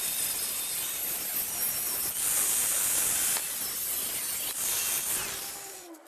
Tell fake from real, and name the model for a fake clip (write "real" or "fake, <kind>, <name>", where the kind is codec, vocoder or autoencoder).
real